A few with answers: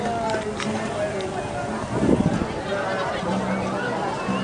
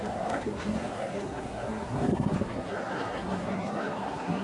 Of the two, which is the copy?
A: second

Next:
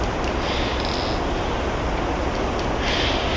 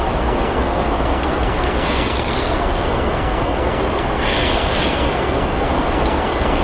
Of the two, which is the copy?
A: second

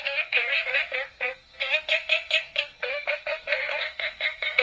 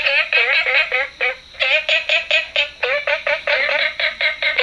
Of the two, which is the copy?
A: first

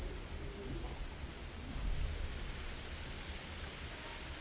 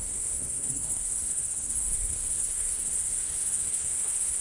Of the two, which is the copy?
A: second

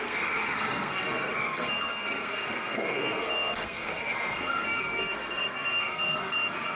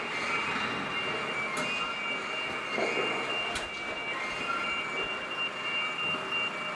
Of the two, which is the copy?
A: first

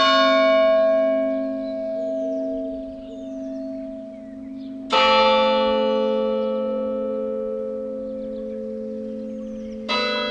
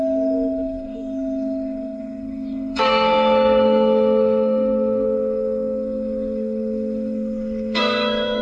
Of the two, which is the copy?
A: second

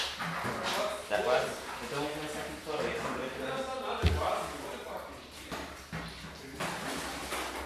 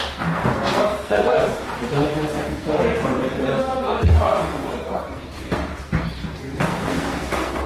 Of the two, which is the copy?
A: second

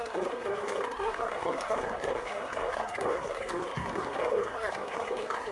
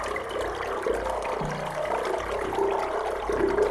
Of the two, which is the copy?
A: first